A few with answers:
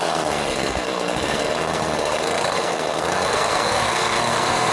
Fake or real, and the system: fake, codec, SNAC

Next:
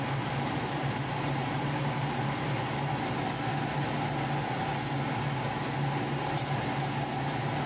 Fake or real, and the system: real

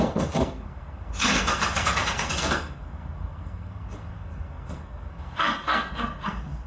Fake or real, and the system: fake, codec, SNAC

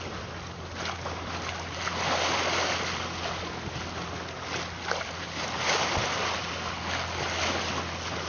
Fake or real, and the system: real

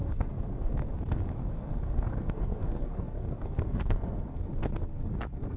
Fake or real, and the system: fake, codec, SNAC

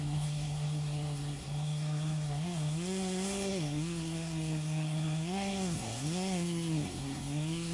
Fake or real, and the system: fake, codec, SNAC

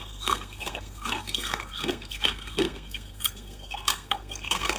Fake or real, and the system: fake, codec, SNAC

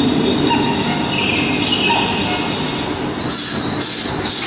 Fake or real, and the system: real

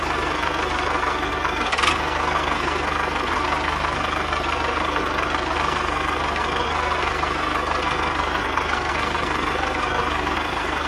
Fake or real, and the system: fake, codec, SNAC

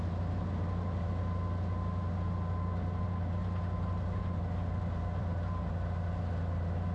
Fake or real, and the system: real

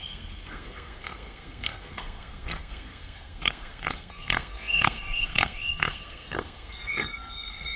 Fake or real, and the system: fake, codec, SNAC